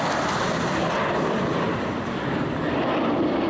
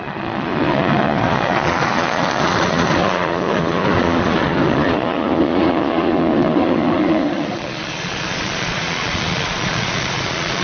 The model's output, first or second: second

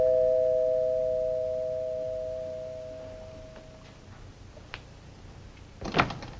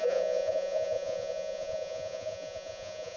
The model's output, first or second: second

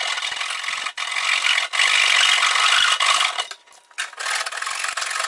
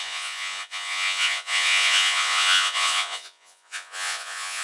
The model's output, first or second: second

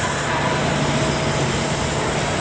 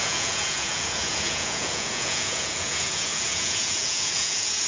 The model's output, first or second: second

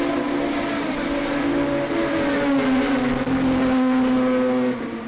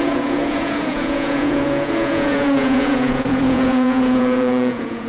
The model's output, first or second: second